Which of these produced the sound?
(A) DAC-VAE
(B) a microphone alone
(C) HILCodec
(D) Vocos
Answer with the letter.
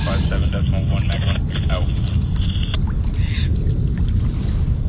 B